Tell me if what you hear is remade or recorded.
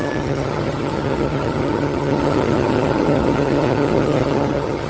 remade